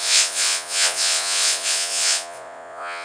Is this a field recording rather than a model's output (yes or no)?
no